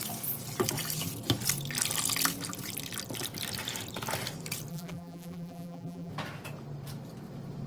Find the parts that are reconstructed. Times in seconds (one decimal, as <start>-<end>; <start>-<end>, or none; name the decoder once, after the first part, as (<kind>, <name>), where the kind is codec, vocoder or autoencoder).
4.7-6.1 (vocoder, BigVGAN v2)